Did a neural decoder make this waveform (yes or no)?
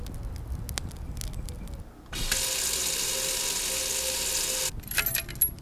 no